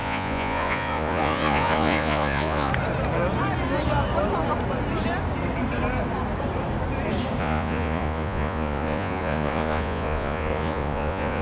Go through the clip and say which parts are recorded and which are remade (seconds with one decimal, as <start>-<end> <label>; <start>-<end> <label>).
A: 0.0-2.7 remade; 2.7-7.4 recorded; 7.4-11.4 remade

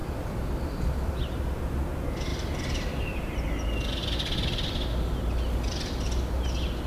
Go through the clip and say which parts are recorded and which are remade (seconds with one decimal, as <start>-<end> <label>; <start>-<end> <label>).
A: 0.0-1.8 remade; 1.8-2.3 recorded; 2.3-3.3 remade; 3.3-4.0 recorded; 4.0-4.6 remade; 4.6-6.9 recorded

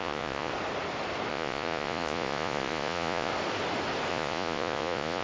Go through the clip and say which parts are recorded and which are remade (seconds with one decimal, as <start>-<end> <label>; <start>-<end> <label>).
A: 0.0-0.5 remade; 0.5-1.3 recorded; 1.3-3.3 remade; 3.3-4.1 recorded; 4.1-5.2 remade